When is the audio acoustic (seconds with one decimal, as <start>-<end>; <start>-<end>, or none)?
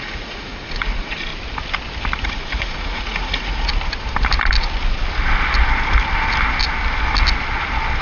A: 1.3-2.2; 3.7-8.0